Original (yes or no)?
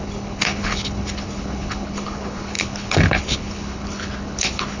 no